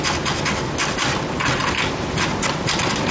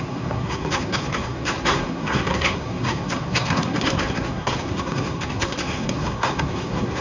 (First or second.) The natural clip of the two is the first